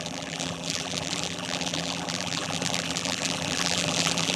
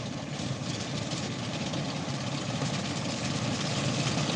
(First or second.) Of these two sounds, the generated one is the first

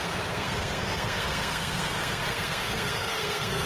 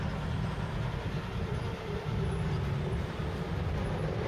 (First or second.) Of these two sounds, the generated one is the first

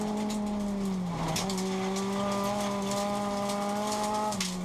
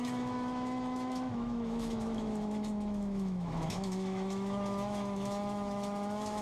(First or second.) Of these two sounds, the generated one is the second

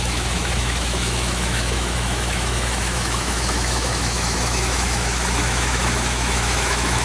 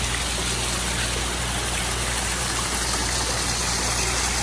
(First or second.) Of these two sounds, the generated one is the first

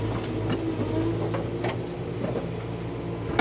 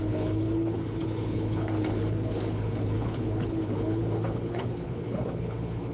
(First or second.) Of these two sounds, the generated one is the second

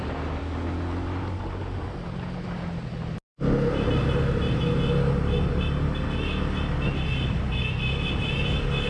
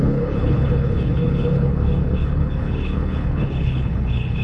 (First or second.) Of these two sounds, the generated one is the second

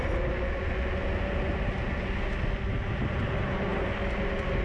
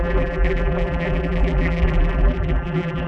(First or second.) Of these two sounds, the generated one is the second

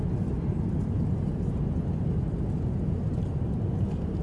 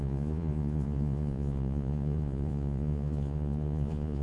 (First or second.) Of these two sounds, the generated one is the second